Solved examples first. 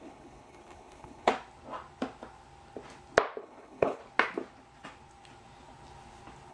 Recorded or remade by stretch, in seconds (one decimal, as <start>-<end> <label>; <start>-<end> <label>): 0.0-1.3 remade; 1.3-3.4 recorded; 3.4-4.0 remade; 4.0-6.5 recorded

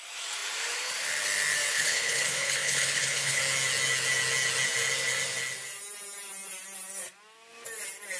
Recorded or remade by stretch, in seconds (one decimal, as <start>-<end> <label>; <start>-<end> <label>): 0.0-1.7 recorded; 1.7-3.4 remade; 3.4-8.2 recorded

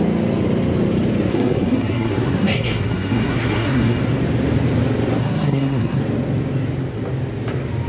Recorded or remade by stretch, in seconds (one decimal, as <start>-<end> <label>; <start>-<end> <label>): 0.0-1.3 recorded; 1.3-4.0 remade; 4.0-5.2 recorded; 5.2-6.0 remade; 6.0-7.9 recorded